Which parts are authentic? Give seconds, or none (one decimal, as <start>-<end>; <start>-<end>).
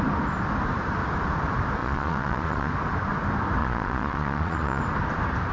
0.0-1.8; 2.7-3.6; 4.8-5.5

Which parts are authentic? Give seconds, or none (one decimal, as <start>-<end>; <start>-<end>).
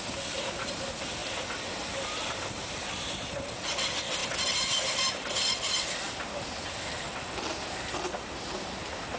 0.0-9.2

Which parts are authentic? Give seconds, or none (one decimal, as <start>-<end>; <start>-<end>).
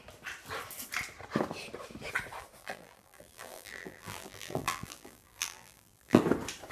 0.0-2.6; 6.2-6.7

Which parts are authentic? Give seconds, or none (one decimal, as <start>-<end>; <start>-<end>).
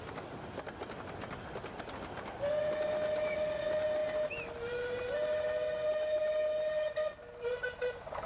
0.0-8.3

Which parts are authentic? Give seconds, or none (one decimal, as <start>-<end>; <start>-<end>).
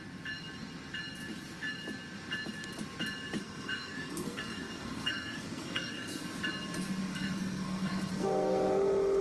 0.0-3.4; 6.2-7.1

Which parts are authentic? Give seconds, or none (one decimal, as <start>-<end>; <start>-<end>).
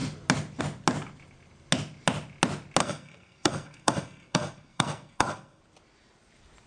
0.0-2.8; 5.6-6.7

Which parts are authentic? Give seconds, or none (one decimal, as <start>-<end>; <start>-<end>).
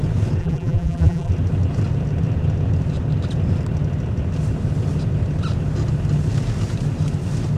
0.0-0.4; 1.3-7.6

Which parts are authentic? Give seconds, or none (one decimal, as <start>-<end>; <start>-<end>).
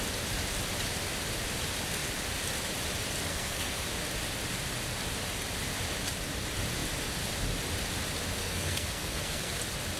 0.0-3.3; 3.9-8.4; 9.6-10.0